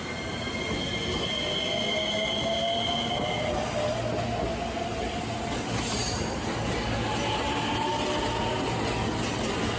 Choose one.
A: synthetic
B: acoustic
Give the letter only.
B